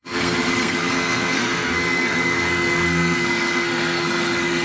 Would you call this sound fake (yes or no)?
yes